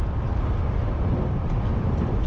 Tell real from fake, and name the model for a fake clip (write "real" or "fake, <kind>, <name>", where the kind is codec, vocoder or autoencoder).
real